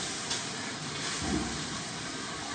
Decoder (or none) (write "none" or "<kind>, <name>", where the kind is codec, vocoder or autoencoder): none